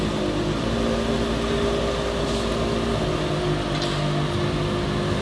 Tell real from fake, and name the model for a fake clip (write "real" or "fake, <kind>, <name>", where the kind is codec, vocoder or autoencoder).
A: real